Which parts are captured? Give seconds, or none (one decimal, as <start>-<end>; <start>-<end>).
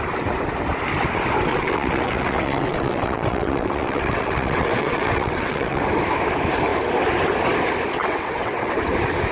0.0-1.5; 5.8-8.0; 8.7-9.3